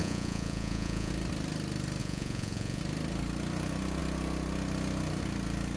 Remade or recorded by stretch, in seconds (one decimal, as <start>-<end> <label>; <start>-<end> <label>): 0.0-1.1 remade; 1.1-2.0 recorded; 2.0-2.8 remade; 2.8-5.8 recorded